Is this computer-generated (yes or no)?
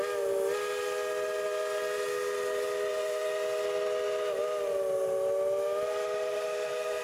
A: no